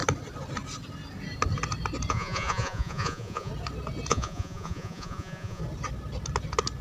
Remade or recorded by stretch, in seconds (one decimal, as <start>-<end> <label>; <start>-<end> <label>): 0.0-2.1 recorded; 2.1-3.5 remade; 3.5-4.1 recorded; 4.1-5.6 remade; 5.6-6.8 recorded